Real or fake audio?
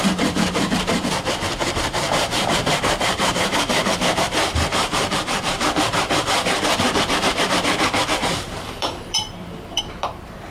fake